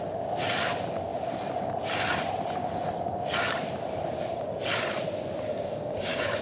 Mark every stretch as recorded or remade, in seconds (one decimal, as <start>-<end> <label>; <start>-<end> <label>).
0.0-5.5 recorded; 5.5-6.4 remade